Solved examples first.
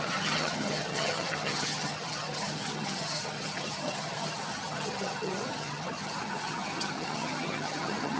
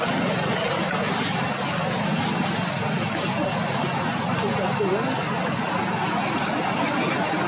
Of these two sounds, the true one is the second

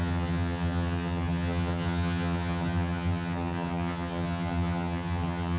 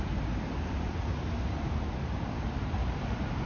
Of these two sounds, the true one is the second